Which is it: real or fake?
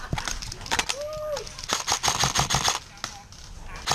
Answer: real